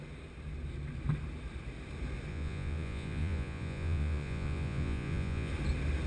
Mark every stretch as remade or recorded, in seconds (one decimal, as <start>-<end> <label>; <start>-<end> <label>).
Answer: 0.0-2.3 recorded; 2.3-5.5 remade; 5.5-6.1 recorded